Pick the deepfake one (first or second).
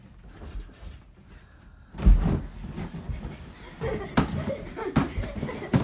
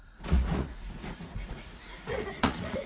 second